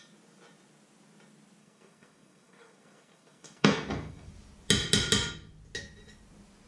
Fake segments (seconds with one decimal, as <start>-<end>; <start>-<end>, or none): 1.6-4.3